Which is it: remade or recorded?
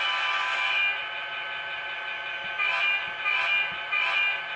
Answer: recorded